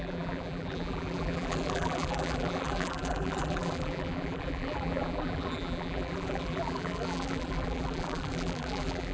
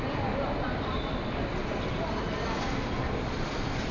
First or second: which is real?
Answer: second